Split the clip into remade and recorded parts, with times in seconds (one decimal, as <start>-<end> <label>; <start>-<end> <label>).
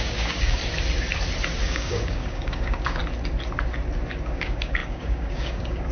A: 0.0-0.6 remade; 0.6-1.6 recorded; 1.6-3.0 remade; 3.0-4.2 recorded; 4.2-5.9 remade